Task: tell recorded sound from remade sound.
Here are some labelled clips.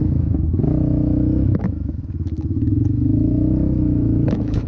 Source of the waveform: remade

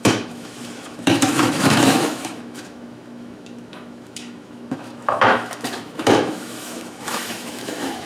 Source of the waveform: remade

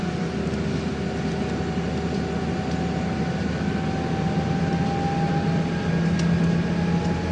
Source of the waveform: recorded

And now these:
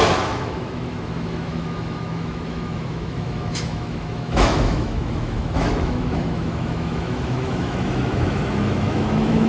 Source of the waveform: remade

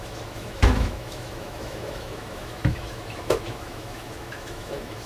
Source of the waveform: remade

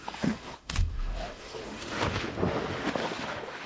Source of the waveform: remade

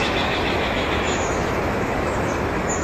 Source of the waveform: remade